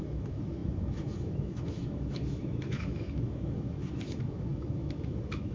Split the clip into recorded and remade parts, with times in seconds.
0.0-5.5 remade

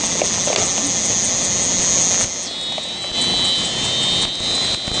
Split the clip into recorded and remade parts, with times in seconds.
0.0-5.0 recorded